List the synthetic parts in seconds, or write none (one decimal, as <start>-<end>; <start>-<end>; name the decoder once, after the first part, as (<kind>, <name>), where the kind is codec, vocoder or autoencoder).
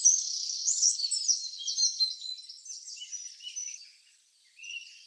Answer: 0.6-1.1 (codec, HILCodec)